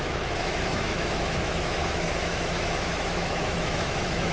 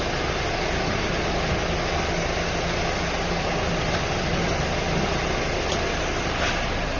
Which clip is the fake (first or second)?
first